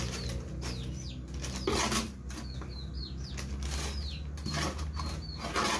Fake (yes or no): no